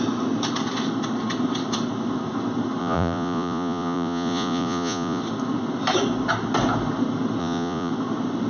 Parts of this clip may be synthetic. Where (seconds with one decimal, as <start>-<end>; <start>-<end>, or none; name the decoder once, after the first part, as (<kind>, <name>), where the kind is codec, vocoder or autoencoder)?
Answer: 2.8-5.2 (vocoder, Vocos); 7.4-7.9